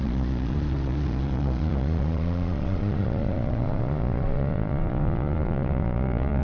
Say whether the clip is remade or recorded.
remade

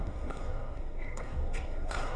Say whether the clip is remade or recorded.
remade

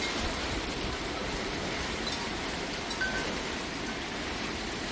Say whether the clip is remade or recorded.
recorded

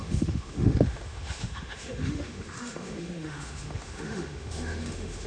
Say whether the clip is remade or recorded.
remade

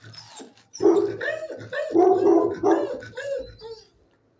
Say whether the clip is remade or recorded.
recorded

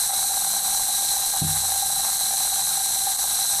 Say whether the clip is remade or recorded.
recorded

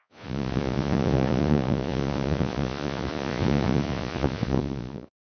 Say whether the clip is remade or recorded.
remade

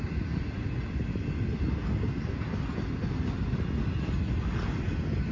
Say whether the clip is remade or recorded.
recorded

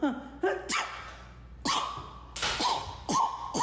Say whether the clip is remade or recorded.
recorded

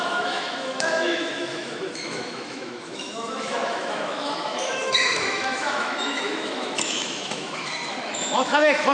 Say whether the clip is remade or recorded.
remade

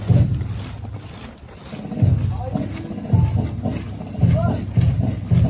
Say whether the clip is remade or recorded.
recorded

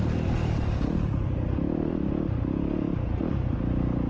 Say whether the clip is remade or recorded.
recorded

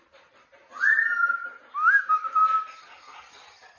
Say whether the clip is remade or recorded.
recorded